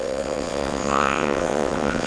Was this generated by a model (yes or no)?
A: yes